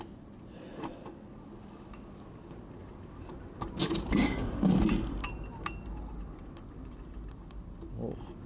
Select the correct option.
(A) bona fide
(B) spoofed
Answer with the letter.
A